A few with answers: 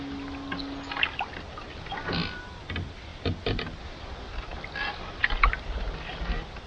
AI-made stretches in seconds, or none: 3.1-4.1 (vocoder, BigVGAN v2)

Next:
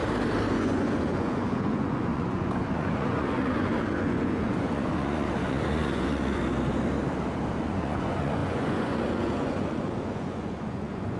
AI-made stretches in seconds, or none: 0.5-6.4 (vocoder, Vocos); 7.6-11.2

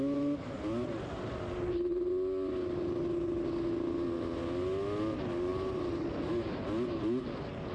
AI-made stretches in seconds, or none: none

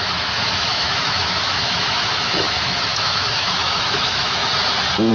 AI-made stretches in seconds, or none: 0.0-4.4 (autoencoder, DAC-VAE)

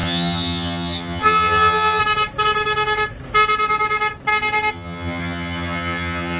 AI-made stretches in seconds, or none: 0.0-2.0 (vocoder, HiFi-GAN); 4.7-6.4

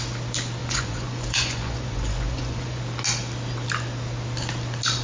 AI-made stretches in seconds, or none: 0.6-2.8 (vocoder, Vocos)